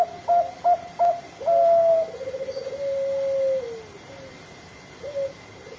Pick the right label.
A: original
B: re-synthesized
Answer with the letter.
A